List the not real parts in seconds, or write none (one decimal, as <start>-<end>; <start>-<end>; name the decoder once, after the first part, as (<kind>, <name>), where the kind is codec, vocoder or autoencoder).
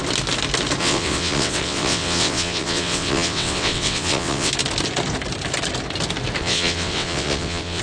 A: 0.8-4.5 (vocoder, WaveNeXt); 6.4-7.8